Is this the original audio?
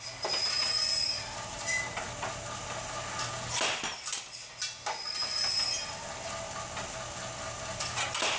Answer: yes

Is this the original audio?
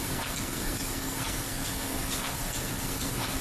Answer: no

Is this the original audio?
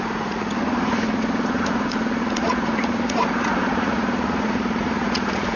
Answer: no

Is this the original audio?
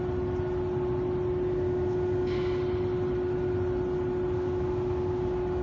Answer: yes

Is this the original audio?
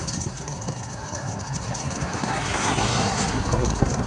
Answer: no